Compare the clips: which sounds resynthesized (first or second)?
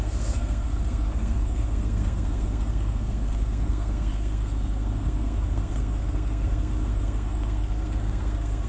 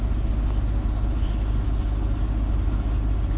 first